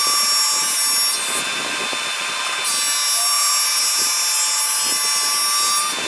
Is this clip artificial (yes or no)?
no